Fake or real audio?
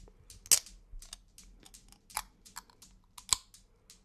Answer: real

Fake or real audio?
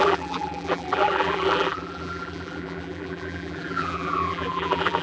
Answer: fake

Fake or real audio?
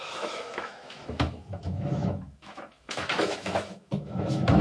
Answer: fake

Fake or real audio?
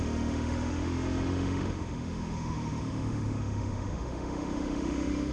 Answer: fake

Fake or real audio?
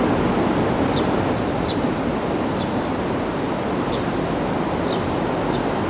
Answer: real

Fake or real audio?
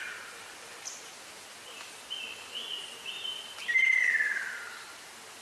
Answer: real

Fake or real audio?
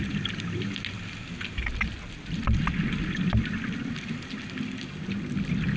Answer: real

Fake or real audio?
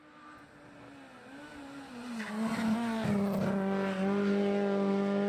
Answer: real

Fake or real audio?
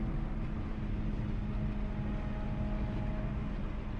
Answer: real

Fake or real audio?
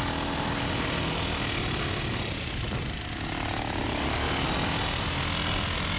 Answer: real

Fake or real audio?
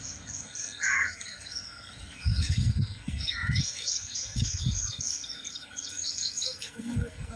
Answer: fake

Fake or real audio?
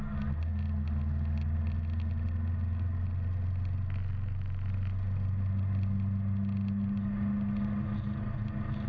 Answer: real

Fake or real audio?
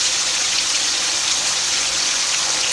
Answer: fake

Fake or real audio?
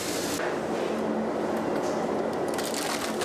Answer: real